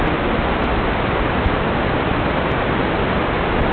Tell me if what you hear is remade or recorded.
recorded